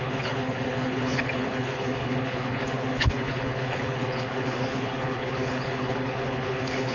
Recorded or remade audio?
remade